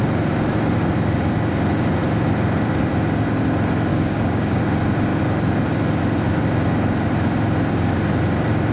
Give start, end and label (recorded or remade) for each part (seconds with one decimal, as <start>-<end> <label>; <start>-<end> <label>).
0.0-3.9 recorded; 3.9-4.6 remade; 4.6-8.7 recorded